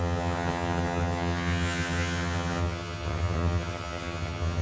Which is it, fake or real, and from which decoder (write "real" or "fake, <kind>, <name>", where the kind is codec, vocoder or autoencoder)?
fake, vocoder, HiFi-GAN